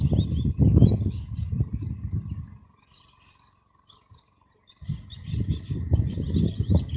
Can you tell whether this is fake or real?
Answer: real